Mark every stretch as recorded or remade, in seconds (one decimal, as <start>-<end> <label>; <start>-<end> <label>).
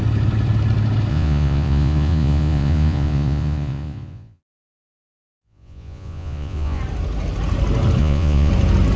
0.0-1.1 recorded; 1.1-4.4 remade; 4.4-5.2 recorded; 5.2-6.8 remade; 6.8-8.0 recorded; 8.0-8.5 remade; 8.5-9.0 recorded